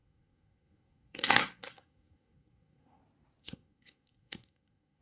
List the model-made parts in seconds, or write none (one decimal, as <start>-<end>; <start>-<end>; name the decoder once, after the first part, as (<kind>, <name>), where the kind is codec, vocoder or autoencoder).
0.0-3.0 (codec, SNAC); 3.4-5.0